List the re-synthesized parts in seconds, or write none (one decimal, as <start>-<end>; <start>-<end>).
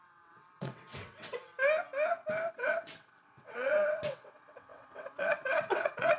0.0-1.5; 2.5-6.2